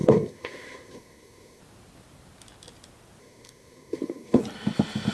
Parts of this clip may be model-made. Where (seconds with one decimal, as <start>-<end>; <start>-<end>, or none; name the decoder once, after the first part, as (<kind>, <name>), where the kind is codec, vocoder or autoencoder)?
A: 0.0-1.6 (codec, SNAC); 3.2-4.4

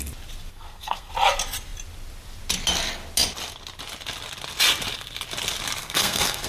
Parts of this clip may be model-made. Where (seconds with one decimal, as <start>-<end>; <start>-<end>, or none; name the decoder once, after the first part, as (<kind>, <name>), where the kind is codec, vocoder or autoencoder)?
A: 0.5-1.1 (codec, SNAC); 5.8-6.5